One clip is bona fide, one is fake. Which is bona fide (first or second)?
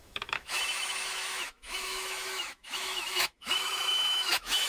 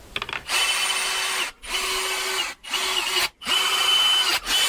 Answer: second